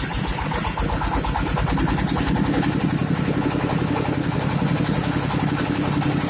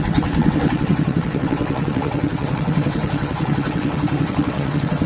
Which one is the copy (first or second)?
second